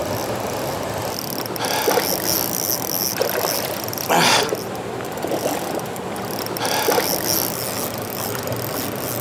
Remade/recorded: recorded